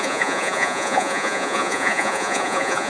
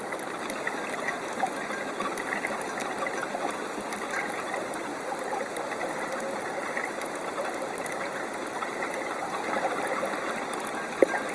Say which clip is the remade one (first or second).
first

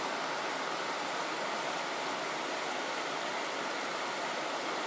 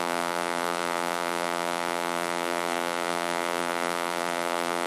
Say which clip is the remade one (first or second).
second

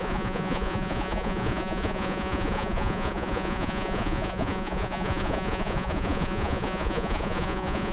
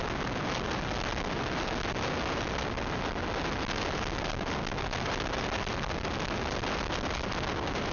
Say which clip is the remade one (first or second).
first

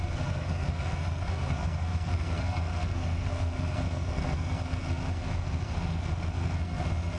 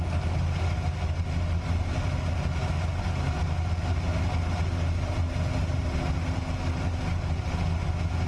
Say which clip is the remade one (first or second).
first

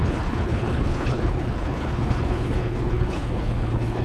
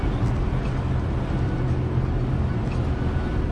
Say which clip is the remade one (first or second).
first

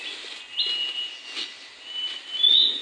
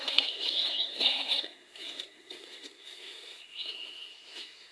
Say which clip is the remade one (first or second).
second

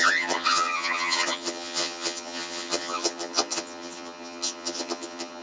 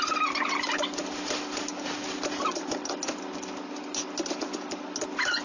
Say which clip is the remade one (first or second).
first